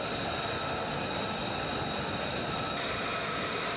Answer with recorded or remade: recorded